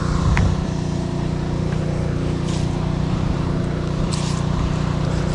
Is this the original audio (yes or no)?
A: no